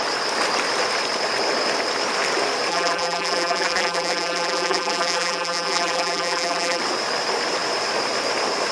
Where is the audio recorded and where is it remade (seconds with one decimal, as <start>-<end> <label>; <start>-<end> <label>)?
0.0-2.7 recorded; 2.7-6.8 remade; 6.8-8.7 recorded